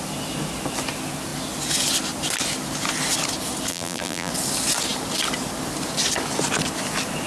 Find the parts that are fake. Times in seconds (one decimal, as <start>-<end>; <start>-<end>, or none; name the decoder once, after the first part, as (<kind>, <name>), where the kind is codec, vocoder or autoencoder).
3.7-4.3 (vocoder, BigVGAN v2)